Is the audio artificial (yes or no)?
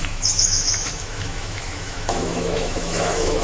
yes